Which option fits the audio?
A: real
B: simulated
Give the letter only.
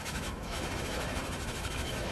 B